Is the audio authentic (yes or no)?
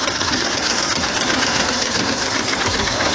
no